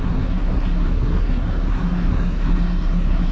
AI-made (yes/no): yes